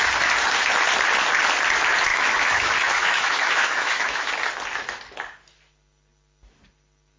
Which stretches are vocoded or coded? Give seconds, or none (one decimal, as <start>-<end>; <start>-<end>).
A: 2.1-4.3